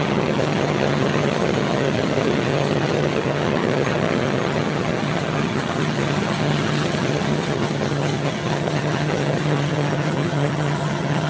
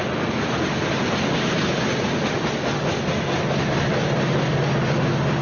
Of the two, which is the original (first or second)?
second